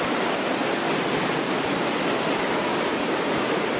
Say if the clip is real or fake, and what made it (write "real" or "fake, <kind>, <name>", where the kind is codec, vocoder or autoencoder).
real